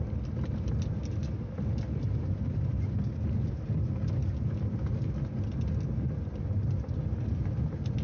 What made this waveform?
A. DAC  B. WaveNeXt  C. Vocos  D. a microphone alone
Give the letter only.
D